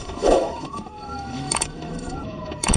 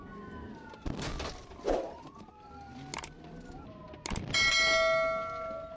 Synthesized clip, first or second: first